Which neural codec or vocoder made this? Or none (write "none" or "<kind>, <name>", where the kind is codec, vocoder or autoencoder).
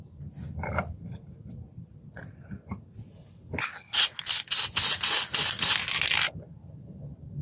none